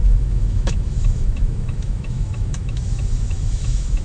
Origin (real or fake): fake